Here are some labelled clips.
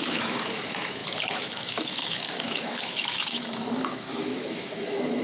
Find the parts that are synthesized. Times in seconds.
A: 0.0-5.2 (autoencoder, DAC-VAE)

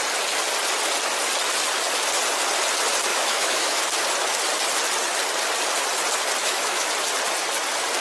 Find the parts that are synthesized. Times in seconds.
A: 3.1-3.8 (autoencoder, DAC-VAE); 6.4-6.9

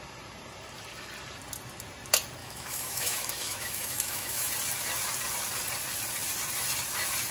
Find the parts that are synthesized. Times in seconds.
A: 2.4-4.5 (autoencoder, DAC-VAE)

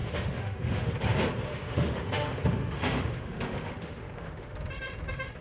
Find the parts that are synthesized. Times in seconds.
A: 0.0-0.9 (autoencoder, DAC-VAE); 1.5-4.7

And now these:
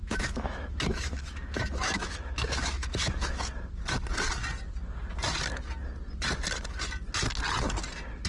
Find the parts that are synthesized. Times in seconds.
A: 0.0-3.5 (autoencoder, DAC-VAE)

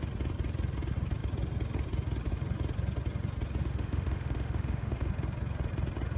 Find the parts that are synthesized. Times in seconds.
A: 3.6-5.1 (autoencoder, DAC-VAE)

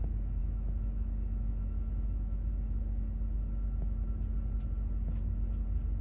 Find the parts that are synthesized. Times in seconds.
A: 0.4-2.5 (autoencoder, DAC-VAE)

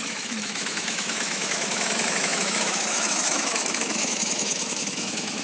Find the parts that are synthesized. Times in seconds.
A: 0.0-5.4 (autoencoder, DAC-VAE)